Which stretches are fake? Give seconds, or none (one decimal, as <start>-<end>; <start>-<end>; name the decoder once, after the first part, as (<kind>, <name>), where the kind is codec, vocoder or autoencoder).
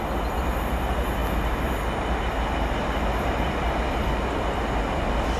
none